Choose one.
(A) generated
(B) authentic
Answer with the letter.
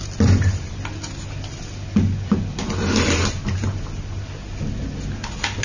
B